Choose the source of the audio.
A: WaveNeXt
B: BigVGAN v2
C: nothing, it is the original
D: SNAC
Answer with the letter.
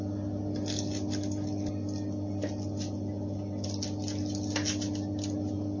C